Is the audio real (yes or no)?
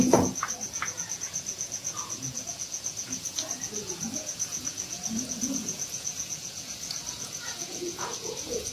no